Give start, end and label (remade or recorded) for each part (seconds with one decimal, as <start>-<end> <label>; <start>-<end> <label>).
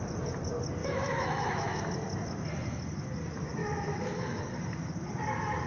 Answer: 0.0-0.8 recorded; 0.8-1.8 remade; 1.8-3.6 recorded; 3.6-4.4 remade; 4.4-5.7 recorded